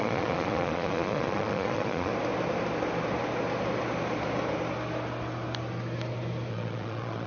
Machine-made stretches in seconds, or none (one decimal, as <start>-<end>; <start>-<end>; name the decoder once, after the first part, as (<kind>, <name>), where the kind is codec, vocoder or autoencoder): 0.0-2.1 (vocoder, Vocos); 6.5-7.3